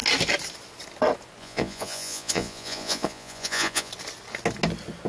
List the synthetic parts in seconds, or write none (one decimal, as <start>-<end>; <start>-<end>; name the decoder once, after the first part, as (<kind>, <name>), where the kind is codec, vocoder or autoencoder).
1.4-3.9 (vocoder, Vocos)